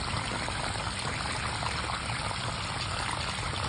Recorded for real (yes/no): yes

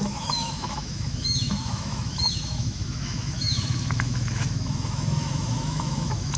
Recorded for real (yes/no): no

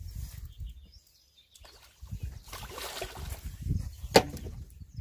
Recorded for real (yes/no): yes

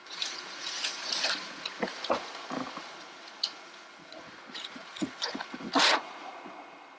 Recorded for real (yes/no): no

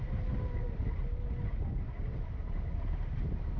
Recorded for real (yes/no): yes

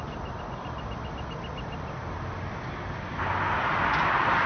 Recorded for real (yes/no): yes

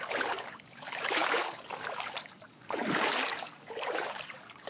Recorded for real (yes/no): no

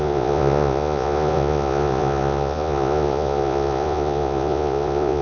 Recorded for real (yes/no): no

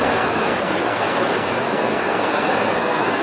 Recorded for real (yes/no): no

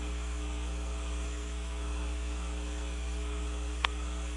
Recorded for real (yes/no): no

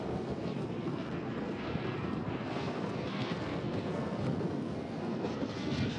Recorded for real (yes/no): no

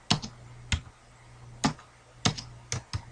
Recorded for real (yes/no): yes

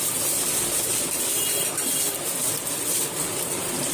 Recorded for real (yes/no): no